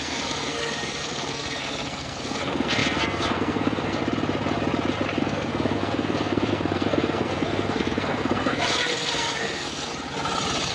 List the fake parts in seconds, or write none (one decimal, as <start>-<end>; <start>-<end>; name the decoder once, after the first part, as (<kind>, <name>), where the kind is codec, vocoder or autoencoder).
0.0-4.0 (codec, SNAC); 5.2-9.9